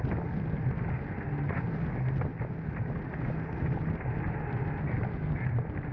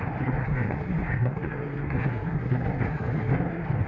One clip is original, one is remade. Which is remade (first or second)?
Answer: second